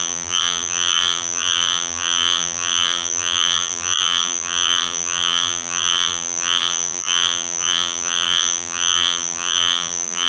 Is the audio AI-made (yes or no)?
yes